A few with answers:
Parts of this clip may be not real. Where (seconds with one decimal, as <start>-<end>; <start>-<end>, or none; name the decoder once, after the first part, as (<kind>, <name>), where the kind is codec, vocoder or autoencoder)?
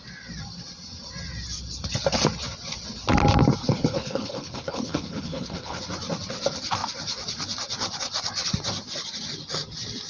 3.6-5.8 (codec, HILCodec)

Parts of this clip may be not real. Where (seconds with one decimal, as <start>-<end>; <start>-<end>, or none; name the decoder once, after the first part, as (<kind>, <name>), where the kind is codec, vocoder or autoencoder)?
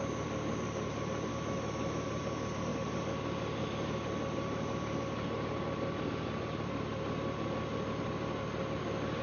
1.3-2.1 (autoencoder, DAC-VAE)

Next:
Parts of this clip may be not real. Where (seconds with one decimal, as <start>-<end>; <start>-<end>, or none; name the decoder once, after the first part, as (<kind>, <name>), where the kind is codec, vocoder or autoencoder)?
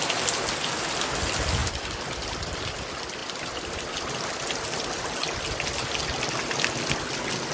none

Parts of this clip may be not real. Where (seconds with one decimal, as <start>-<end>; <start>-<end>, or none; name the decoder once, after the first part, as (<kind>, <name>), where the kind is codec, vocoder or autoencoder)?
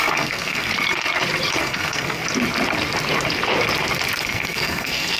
0.0-0.7 (codec, SNAC); 1.6-2.2; 4.2-5.2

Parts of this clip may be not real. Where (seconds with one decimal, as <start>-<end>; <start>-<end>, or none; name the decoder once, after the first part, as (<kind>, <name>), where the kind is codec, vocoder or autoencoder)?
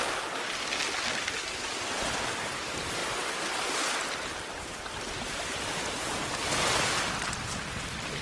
none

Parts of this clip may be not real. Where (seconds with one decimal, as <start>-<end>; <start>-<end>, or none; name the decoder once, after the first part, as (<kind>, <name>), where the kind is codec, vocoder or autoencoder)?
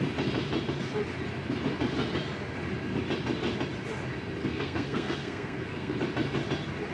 4.4-5.9 (codec, SNAC)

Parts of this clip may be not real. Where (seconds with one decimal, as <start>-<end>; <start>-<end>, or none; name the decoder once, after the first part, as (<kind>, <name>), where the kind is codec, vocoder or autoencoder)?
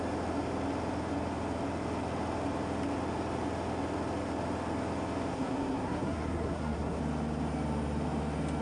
5.3-7.0 (codec, SNAC)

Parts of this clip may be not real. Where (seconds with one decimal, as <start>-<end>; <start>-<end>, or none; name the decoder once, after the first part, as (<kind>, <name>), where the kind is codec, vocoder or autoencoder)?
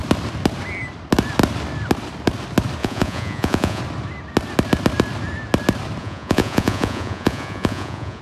2.8-3.8 (vocoder, Vocos); 6.0-8.2